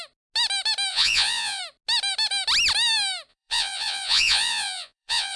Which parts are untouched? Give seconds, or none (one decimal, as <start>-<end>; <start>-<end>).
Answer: 0.0-0.9; 1.6-3.3